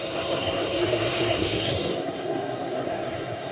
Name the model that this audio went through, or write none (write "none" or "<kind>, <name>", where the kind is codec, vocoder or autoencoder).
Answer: codec, SNAC